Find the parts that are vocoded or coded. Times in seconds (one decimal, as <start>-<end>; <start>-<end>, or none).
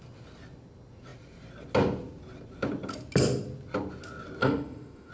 4.4-5.1